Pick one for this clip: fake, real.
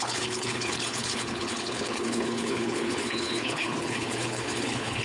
fake